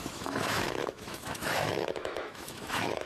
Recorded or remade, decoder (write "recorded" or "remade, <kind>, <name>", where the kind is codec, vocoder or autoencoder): remade, autoencoder, DAC-VAE